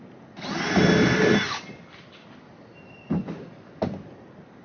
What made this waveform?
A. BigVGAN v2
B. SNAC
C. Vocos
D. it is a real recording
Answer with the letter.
D